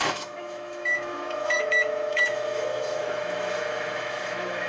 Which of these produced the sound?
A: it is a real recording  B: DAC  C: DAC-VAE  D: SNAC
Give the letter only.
C